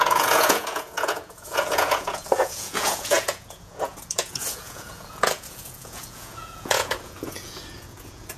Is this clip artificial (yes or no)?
yes